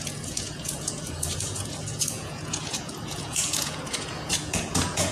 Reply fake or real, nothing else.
fake